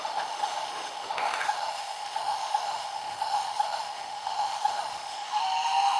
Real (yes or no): no